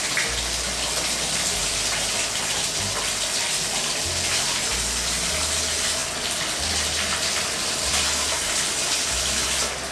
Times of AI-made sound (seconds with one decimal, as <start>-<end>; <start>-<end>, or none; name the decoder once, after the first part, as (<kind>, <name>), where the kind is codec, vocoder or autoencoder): 1.6-2.6 (vocoder, BigVGAN v2)